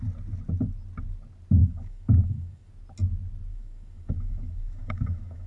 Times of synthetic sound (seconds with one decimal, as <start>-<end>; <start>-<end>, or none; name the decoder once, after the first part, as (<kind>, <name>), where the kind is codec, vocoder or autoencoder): 1.6-2.7 (autoencoder, DAC-VAE); 3.5-5.5

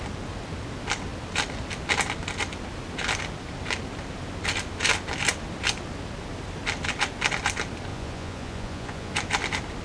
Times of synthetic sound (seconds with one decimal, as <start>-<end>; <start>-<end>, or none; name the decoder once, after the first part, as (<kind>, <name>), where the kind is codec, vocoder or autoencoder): 7.9-9.1 (vocoder, Vocos)

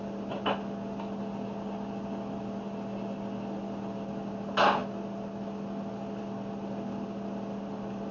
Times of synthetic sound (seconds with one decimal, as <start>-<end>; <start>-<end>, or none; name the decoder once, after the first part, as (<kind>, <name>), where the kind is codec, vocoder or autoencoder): none

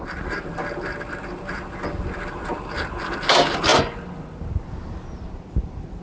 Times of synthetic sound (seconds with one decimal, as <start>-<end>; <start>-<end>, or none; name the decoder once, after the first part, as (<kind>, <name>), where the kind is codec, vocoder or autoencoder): none

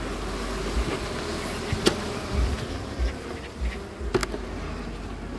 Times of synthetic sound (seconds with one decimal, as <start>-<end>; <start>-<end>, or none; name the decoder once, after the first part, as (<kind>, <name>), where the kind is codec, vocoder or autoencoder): none

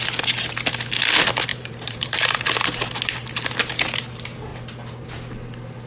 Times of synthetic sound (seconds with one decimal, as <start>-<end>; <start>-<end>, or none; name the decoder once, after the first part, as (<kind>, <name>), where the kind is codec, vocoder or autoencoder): 1.5-2.9 (vocoder, BigVGAN v2)

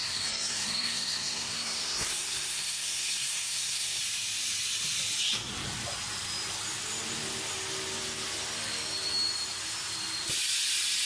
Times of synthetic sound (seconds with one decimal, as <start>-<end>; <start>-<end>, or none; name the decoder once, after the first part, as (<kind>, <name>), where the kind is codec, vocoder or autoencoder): 0.0-4.0 (codec, SNAC)